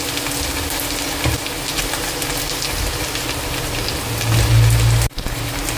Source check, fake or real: real